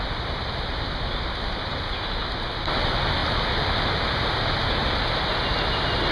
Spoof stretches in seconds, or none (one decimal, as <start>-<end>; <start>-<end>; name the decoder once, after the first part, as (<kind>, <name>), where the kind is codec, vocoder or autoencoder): none

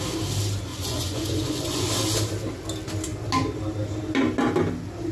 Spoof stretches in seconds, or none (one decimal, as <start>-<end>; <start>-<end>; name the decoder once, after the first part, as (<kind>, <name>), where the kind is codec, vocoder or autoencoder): 0.7-1.9 (vocoder, Vocos)

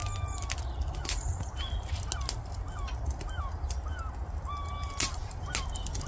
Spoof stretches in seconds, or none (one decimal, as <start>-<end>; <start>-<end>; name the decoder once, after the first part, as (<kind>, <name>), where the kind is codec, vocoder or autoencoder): none

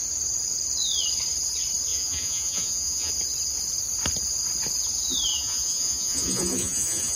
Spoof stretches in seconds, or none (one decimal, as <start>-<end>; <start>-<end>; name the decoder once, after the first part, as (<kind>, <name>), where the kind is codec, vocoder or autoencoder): 1.9-3.1 (vocoder, Vocos); 5.3-7.2